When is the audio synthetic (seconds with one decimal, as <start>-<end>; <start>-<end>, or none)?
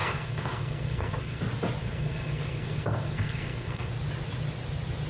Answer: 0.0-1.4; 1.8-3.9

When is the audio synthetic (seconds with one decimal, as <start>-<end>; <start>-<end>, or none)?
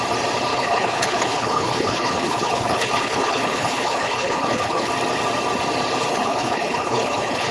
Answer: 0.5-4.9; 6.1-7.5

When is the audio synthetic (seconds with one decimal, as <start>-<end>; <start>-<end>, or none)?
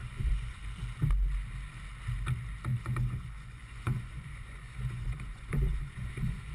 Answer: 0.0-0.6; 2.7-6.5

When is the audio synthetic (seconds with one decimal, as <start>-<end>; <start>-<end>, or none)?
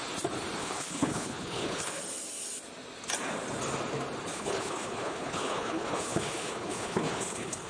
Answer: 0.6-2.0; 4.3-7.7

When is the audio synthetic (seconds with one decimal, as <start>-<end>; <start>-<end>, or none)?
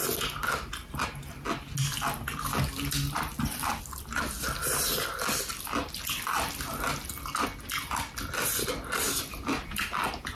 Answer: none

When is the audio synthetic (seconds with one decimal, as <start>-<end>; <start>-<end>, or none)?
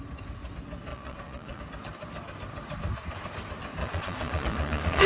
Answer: 0.9-1.6; 3.8-5.1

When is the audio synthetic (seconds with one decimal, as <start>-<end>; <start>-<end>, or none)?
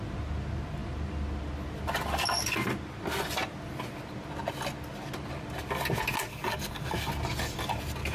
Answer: 6.3-7.1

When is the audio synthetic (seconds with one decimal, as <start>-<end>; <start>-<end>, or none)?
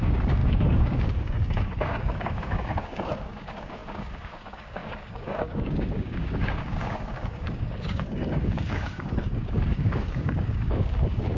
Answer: 0.0-11.4